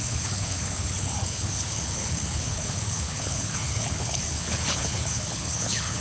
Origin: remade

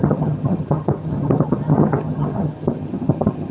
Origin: remade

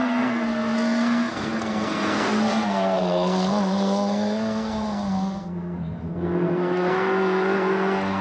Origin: remade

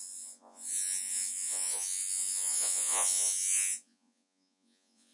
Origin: remade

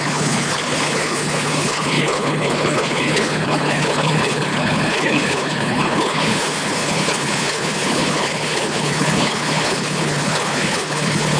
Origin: remade